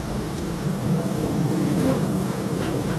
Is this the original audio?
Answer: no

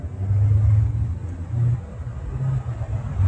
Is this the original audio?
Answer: yes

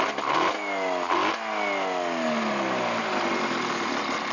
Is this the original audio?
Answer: yes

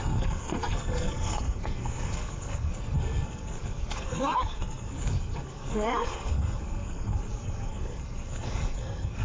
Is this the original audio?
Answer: no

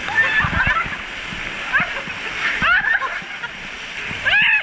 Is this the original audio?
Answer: yes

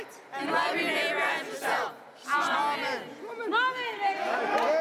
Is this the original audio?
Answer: yes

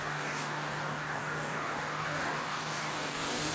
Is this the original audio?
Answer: no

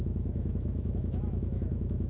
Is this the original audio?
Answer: no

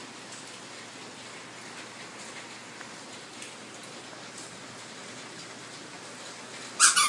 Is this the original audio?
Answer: yes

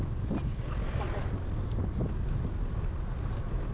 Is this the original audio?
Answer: yes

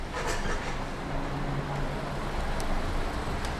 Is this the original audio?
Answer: yes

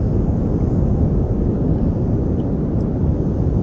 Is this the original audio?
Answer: yes